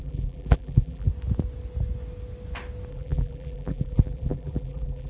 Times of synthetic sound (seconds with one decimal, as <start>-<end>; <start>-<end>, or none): 0.0-1.1; 2.9-5.1